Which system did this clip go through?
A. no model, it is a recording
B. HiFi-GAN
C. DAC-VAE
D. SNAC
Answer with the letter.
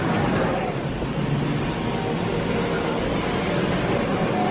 A